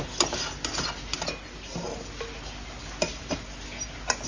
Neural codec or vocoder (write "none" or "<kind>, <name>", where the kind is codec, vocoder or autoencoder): none